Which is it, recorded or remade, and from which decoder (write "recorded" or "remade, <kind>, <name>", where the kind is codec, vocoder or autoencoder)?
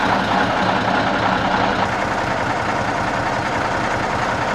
recorded